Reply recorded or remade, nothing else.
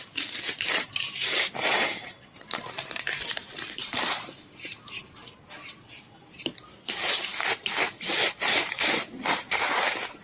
remade